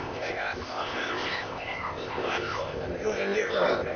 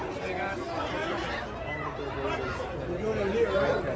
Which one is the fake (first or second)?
first